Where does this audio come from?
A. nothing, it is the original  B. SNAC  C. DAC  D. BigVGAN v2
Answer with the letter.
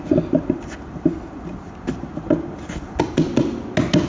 A